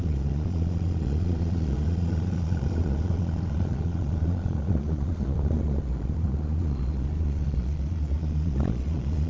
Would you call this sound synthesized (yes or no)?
yes